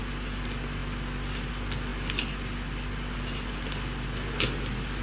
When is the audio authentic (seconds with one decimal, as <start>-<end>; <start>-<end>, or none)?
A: 0.0-5.0